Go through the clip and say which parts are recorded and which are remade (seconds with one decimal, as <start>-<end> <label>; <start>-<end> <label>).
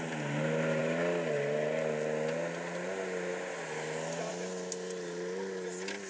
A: 0.0-6.1 recorded